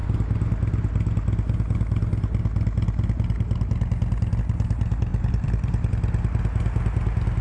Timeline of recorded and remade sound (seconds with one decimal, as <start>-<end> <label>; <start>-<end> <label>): 0.0-5.1 recorded; 5.1-5.9 remade; 5.9-7.4 recorded

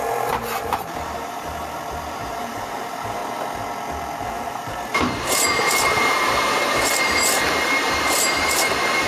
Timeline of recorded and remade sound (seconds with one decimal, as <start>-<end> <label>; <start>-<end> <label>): 0.0-3.2 remade; 3.2-4.3 recorded; 4.3-9.1 remade

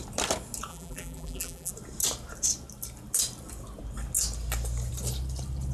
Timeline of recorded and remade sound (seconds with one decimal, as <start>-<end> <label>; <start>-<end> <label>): 0.0-0.7 recorded; 0.7-1.7 remade; 1.7-5.7 recorded

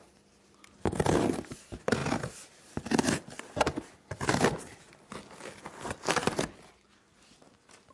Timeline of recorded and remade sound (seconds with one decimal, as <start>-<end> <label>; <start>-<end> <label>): 0.0-7.9 recorded